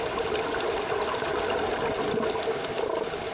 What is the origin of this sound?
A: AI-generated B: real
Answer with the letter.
B